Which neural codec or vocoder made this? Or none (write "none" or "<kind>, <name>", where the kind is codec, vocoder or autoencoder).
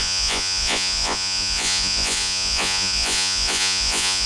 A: vocoder, Vocos